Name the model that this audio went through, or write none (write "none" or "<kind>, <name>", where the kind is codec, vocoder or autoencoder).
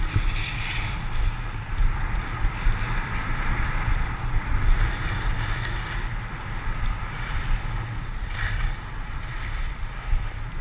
none